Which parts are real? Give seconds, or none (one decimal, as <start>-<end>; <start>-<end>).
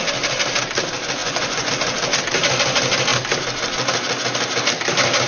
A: 0.0-1.2; 1.7-5.3